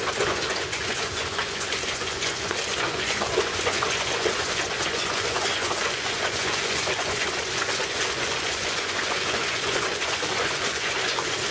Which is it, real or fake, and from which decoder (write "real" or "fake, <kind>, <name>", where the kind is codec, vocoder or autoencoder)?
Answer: fake, vocoder, Vocos